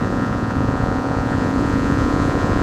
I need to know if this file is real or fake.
fake